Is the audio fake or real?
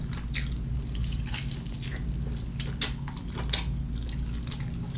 real